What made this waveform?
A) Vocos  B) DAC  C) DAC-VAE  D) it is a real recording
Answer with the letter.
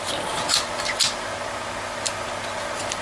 D